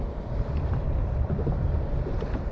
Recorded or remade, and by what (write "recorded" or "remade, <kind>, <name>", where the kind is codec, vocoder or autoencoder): remade, vocoder, BigVGAN v2